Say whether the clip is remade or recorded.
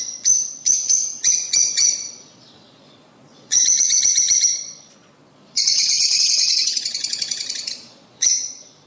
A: remade